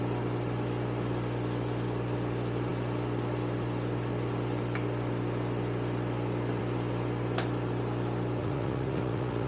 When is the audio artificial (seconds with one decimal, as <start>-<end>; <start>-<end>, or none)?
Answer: 8.4-9.5